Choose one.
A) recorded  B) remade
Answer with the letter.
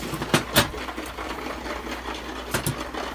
A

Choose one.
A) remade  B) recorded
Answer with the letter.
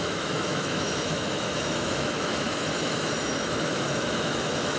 A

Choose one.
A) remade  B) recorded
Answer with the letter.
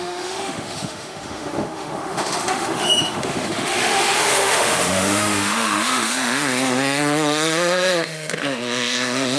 A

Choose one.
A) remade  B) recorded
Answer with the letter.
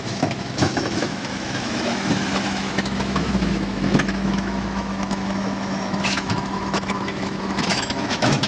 A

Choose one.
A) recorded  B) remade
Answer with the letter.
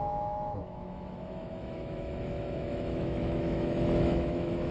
B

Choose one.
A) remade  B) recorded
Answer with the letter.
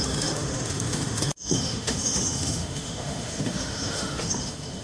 A